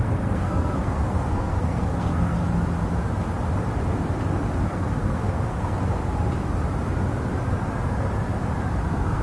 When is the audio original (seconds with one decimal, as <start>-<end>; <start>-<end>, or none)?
2.4-4.6; 6.0-8.7